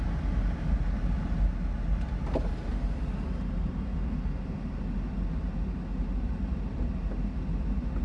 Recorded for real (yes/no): yes